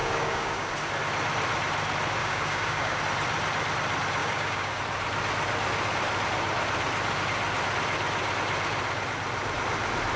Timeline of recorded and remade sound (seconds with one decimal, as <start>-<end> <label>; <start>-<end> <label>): 0.0-0.7 remade; 0.7-2.2 recorded; 2.2-3.0 remade; 3.0-4.2 recorded; 4.2-4.8 remade; 4.8-10.2 recorded